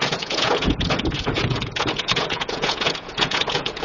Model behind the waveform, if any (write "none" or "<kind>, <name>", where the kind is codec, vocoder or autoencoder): vocoder, Vocos